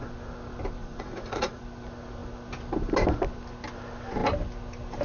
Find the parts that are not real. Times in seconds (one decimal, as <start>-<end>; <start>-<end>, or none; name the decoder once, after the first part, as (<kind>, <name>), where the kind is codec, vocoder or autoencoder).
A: 0.8-1.6 (vocoder, Vocos)